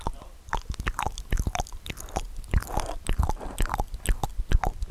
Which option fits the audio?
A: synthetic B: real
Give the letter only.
B